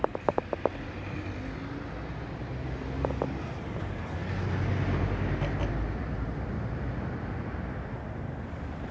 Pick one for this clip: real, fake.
real